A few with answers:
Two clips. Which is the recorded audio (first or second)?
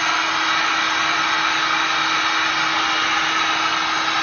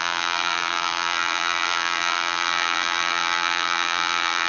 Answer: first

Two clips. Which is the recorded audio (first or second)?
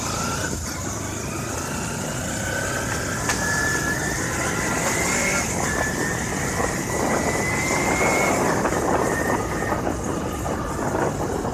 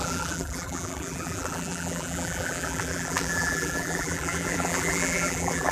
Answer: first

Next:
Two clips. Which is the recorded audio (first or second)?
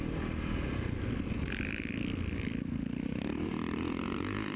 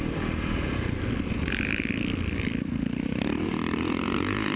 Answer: first